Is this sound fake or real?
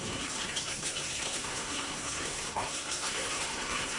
fake